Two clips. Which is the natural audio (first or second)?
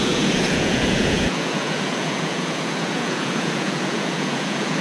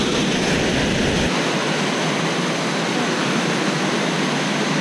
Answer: second